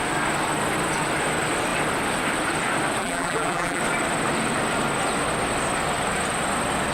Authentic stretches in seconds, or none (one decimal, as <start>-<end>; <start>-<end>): 0.0-3.0; 3.8-6.9